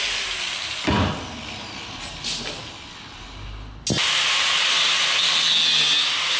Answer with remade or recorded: recorded